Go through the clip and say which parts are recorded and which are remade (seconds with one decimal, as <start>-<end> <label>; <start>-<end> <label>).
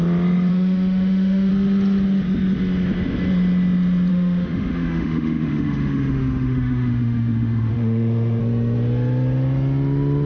0.0-0.5 recorded; 0.5-1.5 remade; 1.5-4.1 recorded; 4.1-8.4 remade; 8.4-10.3 recorded